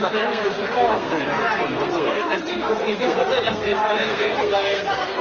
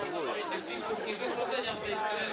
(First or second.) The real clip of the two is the second